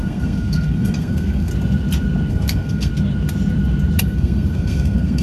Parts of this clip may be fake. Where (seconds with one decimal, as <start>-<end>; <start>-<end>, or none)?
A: 0.0-1.5; 2.3-2.9; 4.0-5.2